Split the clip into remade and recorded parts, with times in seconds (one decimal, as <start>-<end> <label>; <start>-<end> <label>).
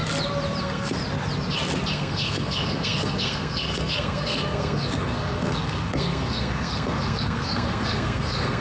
0.0-0.6 recorded; 0.6-1.0 remade; 1.0-1.9 recorded; 1.9-8.6 remade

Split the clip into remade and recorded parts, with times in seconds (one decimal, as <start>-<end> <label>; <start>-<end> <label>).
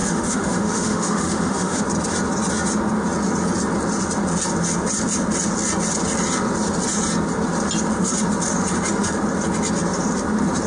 0.0-1.8 remade; 1.8-10.7 recorded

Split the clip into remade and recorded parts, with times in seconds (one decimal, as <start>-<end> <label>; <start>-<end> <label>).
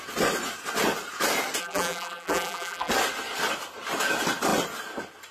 0.0-1.6 recorded; 1.6-2.9 remade; 2.9-5.3 recorded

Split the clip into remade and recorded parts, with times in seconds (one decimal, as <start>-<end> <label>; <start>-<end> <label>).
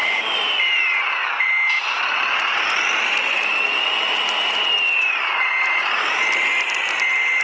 0.0-1.5 remade; 1.5-4.2 recorded; 4.2-5.5 remade; 5.5-7.4 recorded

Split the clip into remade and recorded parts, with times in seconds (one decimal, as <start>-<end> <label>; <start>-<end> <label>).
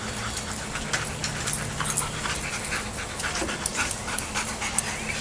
0.0-3.7 recorded; 3.7-4.5 remade; 4.5-5.2 recorded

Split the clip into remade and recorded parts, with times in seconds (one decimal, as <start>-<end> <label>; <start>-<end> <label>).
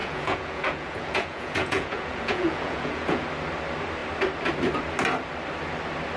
0.0-3.2 remade; 3.2-6.2 recorded